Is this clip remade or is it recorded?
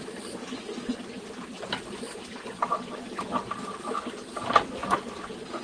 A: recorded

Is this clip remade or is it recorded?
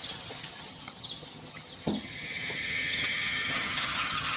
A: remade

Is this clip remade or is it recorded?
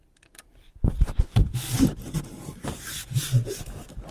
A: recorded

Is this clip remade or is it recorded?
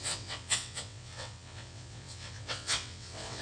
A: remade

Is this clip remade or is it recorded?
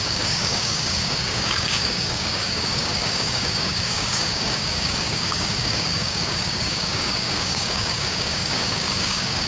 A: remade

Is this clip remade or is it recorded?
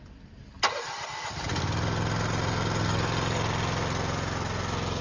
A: recorded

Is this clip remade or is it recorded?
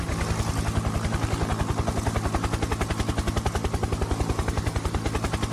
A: recorded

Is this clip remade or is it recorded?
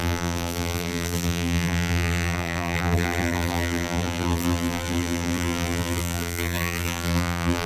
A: remade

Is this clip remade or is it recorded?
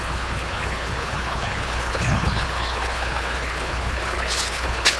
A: remade